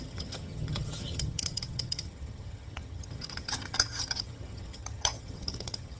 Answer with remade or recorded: remade